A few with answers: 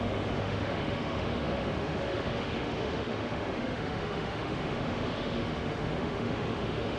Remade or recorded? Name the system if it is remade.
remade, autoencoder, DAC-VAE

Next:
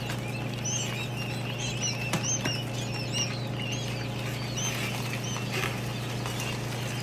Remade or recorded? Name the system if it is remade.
recorded